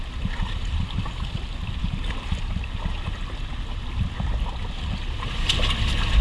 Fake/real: real